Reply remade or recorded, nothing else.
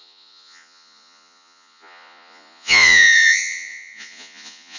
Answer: remade